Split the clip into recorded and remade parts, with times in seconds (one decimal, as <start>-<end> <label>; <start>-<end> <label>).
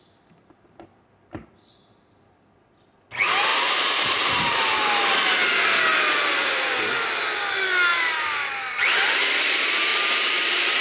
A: 0.0-3.5 recorded; 3.5-4.8 remade; 4.8-5.9 recorded; 5.9-6.9 remade; 6.9-7.9 recorded; 7.9-9.2 remade; 9.2-9.9 recorded; 9.9-10.8 remade